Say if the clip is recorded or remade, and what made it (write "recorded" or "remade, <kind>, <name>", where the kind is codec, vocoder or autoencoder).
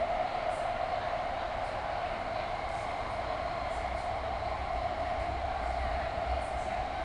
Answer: remade, vocoder, BigVGAN v2